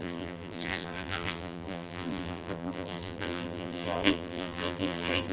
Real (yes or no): no